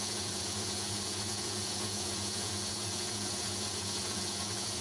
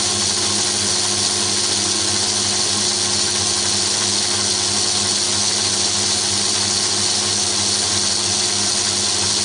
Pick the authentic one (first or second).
second